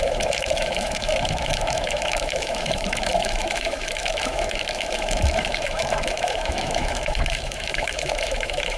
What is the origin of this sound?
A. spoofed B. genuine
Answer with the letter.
A